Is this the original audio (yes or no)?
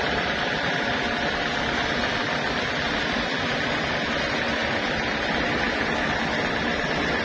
yes